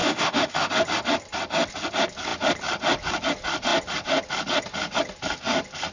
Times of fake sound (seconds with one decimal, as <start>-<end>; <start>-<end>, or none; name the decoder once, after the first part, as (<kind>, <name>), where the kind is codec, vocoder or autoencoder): 0.0-0.7 (autoencoder, DAC-VAE)